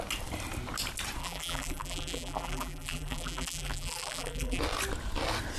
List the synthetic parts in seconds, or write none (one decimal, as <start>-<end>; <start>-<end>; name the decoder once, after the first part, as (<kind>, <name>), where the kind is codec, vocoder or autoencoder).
1.2-4.6 (vocoder, BigVGAN v2)